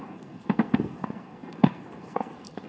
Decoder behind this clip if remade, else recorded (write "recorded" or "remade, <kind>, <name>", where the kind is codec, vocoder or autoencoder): remade, codec, SNAC